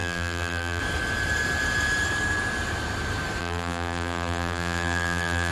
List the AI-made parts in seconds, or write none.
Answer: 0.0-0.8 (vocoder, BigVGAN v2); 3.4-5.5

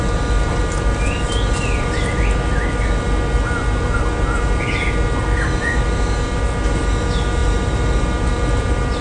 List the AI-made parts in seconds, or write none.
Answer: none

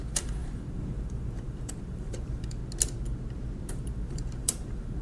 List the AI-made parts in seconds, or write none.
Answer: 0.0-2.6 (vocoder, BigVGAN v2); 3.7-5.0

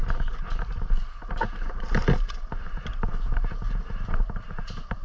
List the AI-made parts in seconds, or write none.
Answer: 1.5-3.1 (vocoder, BigVGAN v2); 3.8-5.0

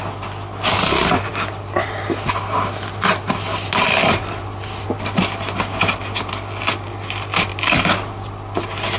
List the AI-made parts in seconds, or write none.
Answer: 1.3-6.3 (vocoder, BigVGAN v2)

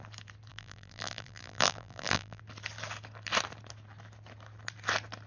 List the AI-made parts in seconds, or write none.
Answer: 0.5-2.4 (vocoder, BigVGAN v2)

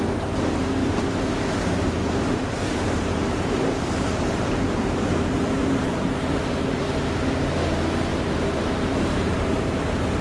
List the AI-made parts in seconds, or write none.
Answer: 0.8-5.1 (vocoder, BigVGAN v2); 5.6-6.8; 8.1-9.7